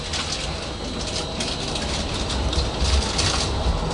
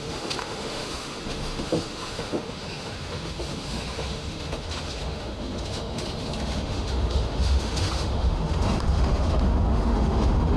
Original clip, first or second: first